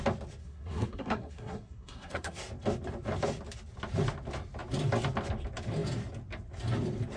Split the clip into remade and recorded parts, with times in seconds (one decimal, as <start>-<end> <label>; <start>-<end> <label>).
0.0-0.4 recorded; 0.4-2.4 remade; 2.4-7.2 recorded